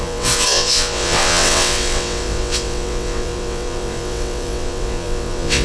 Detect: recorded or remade remade